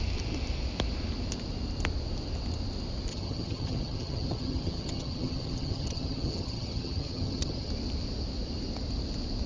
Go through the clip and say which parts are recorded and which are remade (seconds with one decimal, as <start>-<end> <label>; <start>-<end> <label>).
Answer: 0.0-3.1 recorded; 3.1-7.7 remade; 7.7-9.5 recorded